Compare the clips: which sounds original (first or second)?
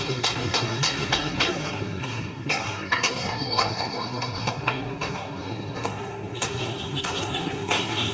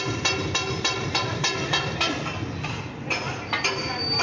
second